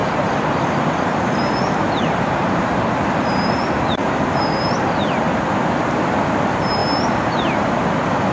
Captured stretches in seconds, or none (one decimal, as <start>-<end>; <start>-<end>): 0.7-1.1; 4.7-6.8; 7.7-8.3